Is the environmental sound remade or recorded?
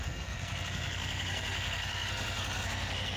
remade